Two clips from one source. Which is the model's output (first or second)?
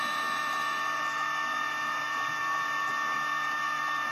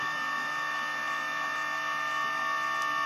first